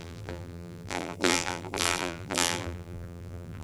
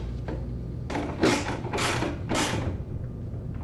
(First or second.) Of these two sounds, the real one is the second